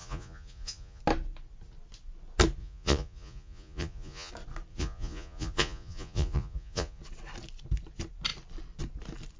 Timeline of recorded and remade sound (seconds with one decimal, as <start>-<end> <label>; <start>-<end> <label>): 0.0-1.0 remade; 1.0-2.6 recorded; 2.6-4.3 remade; 4.3-4.7 recorded; 4.7-7.0 remade; 7.0-9.4 recorded